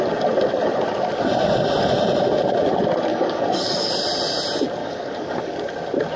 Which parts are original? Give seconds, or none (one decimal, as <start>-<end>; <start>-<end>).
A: 0.0-3.1; 3.9-4.8; 5.6-6.2